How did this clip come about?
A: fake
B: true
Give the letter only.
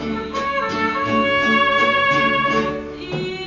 B